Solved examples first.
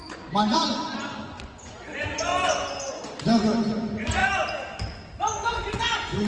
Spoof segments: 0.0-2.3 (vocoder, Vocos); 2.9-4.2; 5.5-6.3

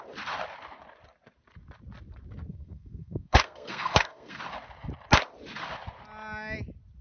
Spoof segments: 2.5-4.4 (codec, SNAC)